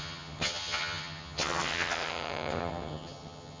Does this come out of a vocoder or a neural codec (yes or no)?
yes